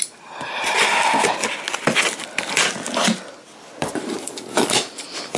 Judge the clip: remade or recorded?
recorded